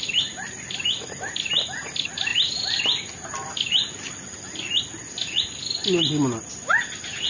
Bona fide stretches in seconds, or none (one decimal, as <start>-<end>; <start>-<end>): 0.0-7.3